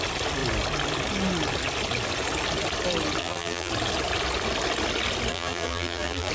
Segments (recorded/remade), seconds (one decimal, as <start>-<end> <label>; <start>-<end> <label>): 0.0-3.2 recorded; 3.2-3.7 remade; 3.7-5.3 recorded; 5.3-6.3 remade